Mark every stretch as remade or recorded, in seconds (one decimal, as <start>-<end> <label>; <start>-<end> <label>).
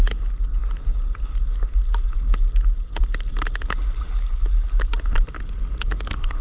0.0-6.4 recorded